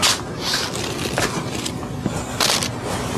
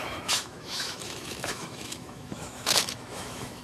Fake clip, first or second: second